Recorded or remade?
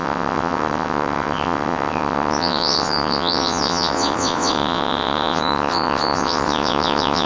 remade